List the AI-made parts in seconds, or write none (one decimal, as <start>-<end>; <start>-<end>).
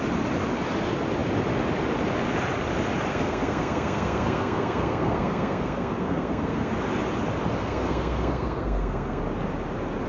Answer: 3.1-6.7; 7.6-9.2